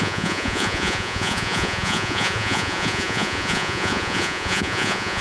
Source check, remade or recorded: remade